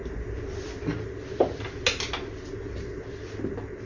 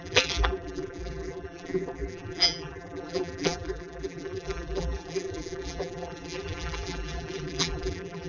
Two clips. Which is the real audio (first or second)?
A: first